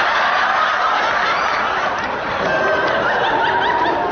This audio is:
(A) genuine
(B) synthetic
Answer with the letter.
A